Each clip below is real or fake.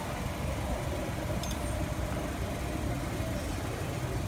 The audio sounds real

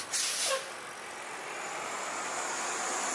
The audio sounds real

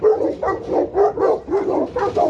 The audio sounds real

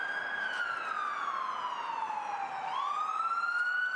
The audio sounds real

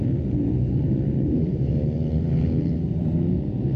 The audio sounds real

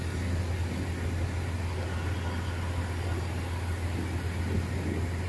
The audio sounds real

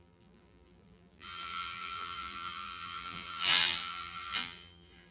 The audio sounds fake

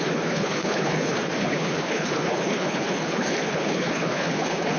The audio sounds fake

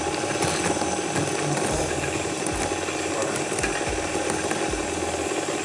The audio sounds real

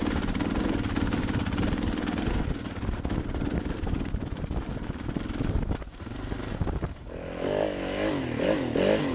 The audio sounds real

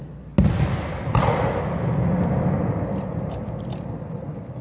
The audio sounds real